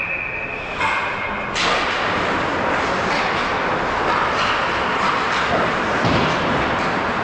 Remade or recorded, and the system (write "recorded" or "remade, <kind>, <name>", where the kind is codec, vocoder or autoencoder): recorded